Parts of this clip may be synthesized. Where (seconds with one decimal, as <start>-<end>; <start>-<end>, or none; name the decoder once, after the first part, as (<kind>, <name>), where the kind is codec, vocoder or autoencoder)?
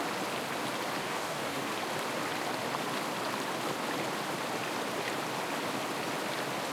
1.0-1.7 (codec, DAC)